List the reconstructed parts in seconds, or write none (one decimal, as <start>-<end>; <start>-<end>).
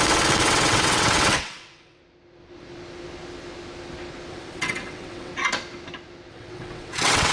0.0-2.0; 4.3-5.3; 6.3-7.3